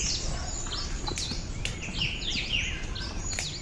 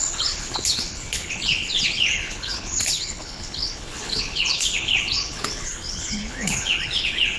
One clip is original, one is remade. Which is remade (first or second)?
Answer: second